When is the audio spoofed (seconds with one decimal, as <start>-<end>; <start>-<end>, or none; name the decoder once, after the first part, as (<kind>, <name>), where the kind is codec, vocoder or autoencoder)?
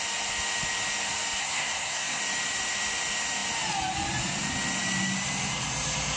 1.4-2.2 (codec, SNAC)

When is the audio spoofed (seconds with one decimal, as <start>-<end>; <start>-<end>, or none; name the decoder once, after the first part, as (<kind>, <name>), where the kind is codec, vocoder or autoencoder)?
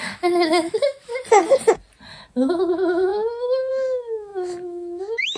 0.0-1.1 (autoencoder, DAC-VAE); 2.1-5.4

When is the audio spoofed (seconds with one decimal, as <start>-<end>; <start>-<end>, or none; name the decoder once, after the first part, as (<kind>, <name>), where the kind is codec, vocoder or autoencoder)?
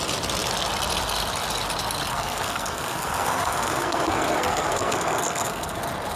2.1-5.8 (codec, SNAC)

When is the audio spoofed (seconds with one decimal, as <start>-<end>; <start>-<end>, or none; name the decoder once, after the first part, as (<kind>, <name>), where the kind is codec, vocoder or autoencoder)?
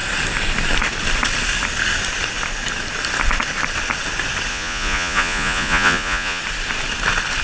4.5-6.4 (vocoder, Vocos)